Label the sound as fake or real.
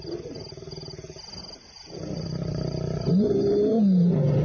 real